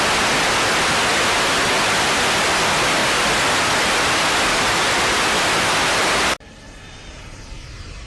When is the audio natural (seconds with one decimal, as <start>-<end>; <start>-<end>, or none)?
0.0-8.1